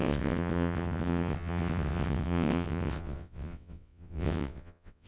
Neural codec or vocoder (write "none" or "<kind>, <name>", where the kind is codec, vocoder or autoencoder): vocoder, WaveNeXt